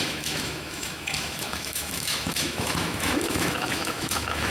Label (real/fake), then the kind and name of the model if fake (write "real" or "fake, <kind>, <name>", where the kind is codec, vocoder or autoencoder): fake, autoencoder, DAC-VAE